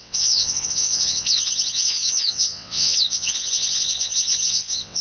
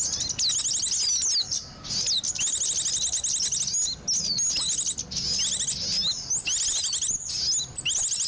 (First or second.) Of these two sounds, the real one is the second